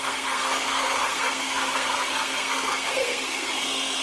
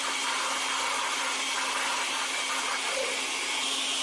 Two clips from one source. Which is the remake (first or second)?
first